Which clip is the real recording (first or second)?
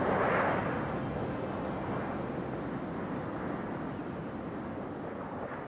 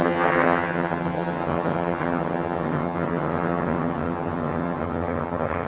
first